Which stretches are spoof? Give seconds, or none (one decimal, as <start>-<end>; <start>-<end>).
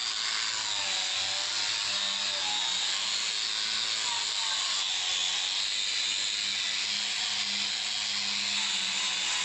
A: none